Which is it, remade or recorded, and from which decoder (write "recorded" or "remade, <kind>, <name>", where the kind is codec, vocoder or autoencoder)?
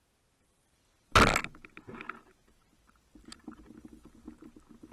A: recorded